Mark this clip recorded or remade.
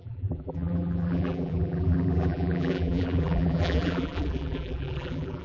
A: remade